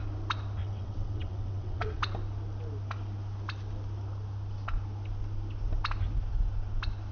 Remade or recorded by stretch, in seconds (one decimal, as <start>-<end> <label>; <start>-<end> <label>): 0.0-0.6 recorded; 0.6-2.0 remade; 2.0-7.1 recorded